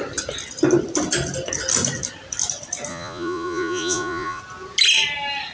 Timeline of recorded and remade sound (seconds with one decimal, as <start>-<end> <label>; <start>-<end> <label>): 0.0-2.9 recorded; 2.9-4.4 remade; 4.4-5.5 recorded